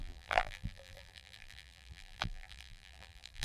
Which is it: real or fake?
fake